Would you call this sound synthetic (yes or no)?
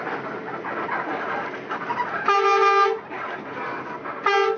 no